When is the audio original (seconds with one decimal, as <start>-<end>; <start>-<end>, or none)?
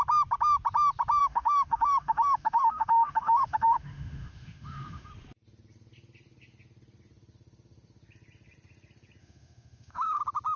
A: 0.0-1.2; 5.1-9.2; 10.2-10.6